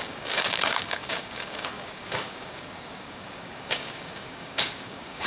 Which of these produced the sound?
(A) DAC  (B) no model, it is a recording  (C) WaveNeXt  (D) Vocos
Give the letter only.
A